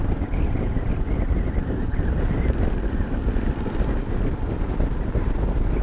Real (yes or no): yes